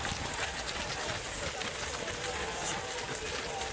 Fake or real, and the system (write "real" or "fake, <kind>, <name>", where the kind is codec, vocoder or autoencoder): real